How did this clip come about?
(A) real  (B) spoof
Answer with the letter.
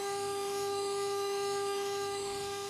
B